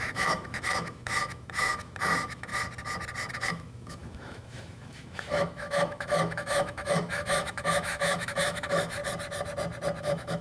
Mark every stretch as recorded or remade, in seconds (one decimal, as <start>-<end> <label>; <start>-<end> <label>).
0.0-2.5 remade; 2.5-3.3 recorded; 3.3-9.0 remade; 9.0-10.0 recorded; 10.0-10.4 remade